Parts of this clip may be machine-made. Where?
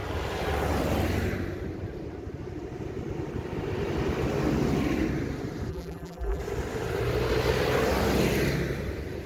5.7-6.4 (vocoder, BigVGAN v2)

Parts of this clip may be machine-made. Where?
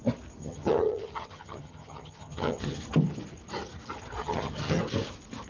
0.4-2.8 (vocoder, HiFi-GAN); 4.2-4.8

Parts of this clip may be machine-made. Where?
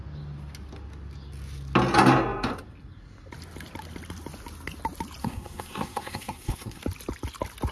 5.2-6.8 (codec, SNAC)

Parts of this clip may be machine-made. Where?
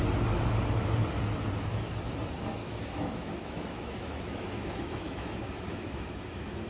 2.6-6.7 (autoencoder, DAC-VAE)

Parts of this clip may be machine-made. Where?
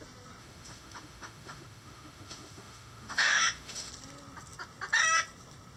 0.4-3.9 (autoencoder, DAC-VAE)